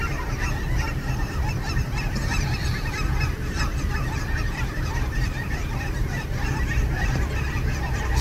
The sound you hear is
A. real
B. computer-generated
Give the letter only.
B